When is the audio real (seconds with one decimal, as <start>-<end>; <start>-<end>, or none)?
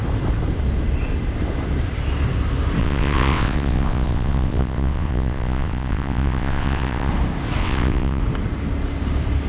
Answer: 0.0-2.8; 7.1-7.6; 8.2-9.5